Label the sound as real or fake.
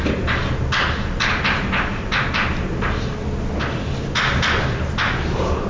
real